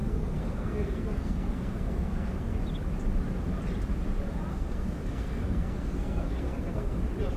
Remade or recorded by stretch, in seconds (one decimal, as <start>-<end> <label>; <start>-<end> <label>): 0.0-2.6 remade; 2.6-4.5 recorded; 4.5-7.0 remade; 7.0-7.4 recorded